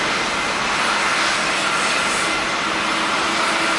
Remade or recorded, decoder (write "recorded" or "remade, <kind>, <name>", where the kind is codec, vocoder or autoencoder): recorded